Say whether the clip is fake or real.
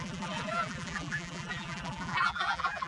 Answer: fake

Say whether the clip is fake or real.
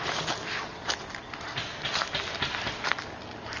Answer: real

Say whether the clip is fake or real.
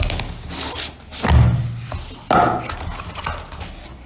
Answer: real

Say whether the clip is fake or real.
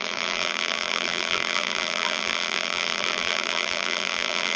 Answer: fake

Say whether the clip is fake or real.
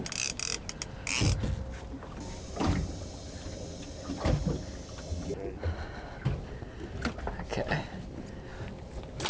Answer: real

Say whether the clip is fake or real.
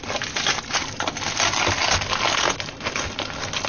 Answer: real